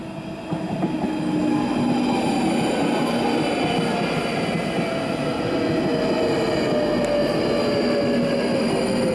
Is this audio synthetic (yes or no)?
no